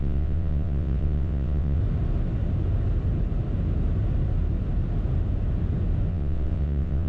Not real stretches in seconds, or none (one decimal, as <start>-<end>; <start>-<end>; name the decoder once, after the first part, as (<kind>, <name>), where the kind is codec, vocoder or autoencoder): 0.0-1.8 (vocoder, WaveNeXt); 6.1-7.1